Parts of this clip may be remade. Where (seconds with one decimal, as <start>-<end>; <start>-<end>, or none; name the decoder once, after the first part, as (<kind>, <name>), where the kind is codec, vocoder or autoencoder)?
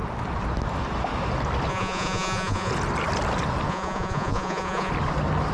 1.7-2.7 (vocoder, Vocos); 3.7-4.9